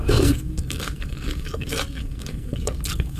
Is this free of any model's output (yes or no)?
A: no